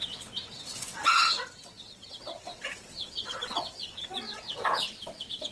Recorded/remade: remade